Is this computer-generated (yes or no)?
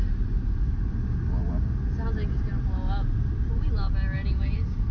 no